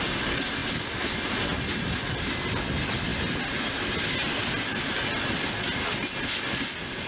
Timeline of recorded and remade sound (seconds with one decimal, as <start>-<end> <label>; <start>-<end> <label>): 0.0-7.1 recorded